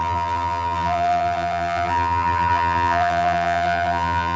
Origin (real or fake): fake